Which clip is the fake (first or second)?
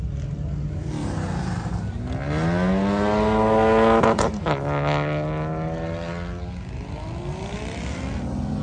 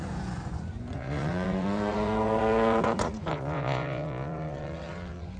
second